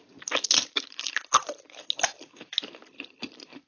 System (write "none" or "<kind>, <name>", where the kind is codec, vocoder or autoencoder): none